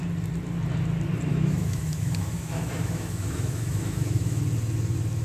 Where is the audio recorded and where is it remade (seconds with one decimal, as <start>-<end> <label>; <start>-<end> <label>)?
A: 0.0-1.3 recorded; 1.3-4.4 remade; 4.4-5.2 recorded